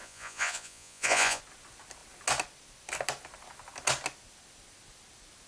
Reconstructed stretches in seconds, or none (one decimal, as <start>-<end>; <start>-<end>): 0.0-1.4